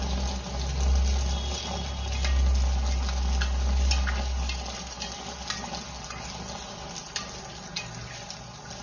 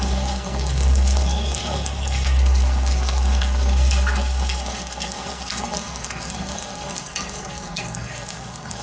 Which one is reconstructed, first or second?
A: second